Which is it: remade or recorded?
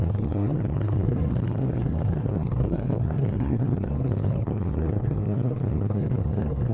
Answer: remade